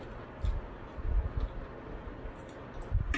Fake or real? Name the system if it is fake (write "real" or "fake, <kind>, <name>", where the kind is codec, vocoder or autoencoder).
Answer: real